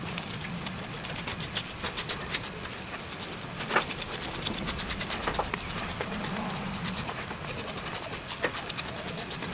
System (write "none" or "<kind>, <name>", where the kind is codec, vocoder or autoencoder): none